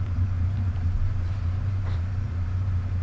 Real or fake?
fake